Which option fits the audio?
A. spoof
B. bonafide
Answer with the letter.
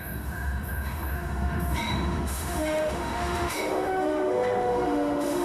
A